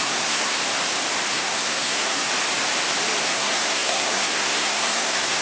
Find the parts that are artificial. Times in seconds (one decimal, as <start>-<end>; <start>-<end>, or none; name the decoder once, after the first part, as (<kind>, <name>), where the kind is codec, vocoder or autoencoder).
0.0-0.6 (codec, SNAC); 1.3-2.3; 3.2-5.4